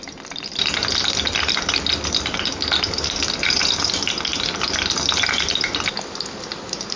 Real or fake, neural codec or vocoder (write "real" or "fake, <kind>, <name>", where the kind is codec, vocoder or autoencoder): real